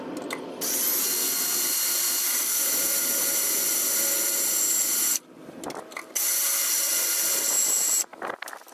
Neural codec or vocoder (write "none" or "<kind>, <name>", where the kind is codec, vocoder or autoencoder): none